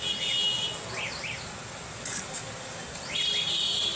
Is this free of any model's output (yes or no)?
yes